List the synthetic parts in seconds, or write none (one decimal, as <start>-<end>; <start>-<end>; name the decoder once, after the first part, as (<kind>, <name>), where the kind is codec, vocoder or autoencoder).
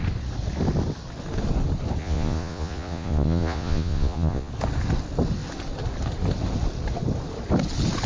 2.0-4.5 (vocoder, Vocos)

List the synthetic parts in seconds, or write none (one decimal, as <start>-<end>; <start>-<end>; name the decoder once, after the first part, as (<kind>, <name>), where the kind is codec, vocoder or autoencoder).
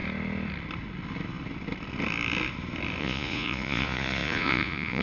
3.0-5.0 (vocoder, Vocos)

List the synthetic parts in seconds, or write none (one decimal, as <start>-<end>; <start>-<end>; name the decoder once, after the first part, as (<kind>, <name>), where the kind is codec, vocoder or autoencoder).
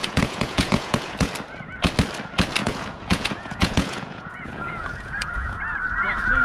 0.0-1.3 (vocoder, Vocos); 2.6-5.6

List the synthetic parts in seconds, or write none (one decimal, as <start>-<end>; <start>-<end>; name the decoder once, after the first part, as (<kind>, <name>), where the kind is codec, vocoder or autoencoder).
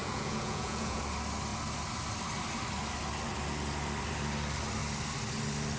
0.0-1.0 (vocoder, Vocos)